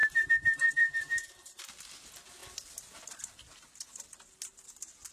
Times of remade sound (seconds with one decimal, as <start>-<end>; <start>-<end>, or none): 0.0-1.6